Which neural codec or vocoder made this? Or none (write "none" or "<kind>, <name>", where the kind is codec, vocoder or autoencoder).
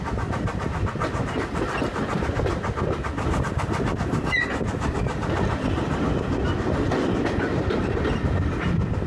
none